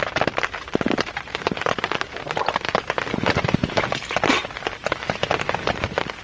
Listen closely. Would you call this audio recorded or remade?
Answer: recorded